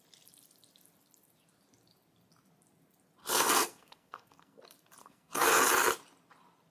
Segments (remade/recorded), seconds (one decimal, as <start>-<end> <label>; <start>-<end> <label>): 0.0-3.2 recorded; 3.2-4.6 remade; 4.6-5.0 recorded; 5.0-5.5 remade; 5.5-6.7 recorded